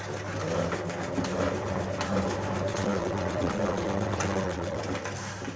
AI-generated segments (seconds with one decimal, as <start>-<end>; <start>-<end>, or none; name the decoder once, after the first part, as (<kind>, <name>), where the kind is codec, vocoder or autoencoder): 2.7-4.8 (vocoder, WaveNeXt)